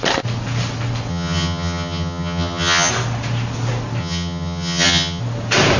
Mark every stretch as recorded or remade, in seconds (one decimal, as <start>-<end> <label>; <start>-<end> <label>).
0.0-1.1 recorded; 1.1-2.9 remade; 2.9-4.0 recorded; 4.0-5.2 remade; 5.2-5.8 recorded